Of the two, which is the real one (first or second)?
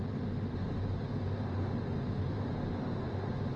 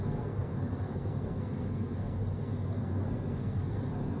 first